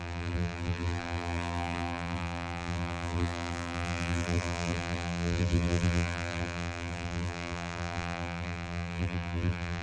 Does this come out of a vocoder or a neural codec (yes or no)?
yes